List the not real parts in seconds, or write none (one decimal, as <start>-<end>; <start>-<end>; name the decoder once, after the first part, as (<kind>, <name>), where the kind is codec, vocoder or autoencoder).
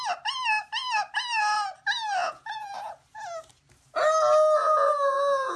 2.2-2.9 (vocoder, Vocos); 4.6-5.6